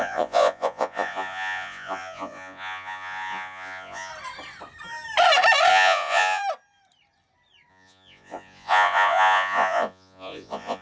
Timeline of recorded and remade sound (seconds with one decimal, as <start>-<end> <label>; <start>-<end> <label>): 0.0-4.1 remade; 4.1-5.7 recorded; 5.7-6.4 remade; 6.4-7.7 recorded; 7.7-10.8 remade